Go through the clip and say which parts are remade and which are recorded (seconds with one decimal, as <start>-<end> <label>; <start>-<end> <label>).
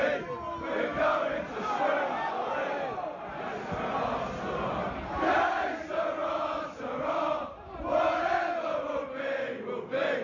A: 0.0-10.2 recorded